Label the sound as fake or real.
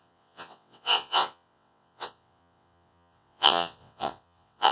fake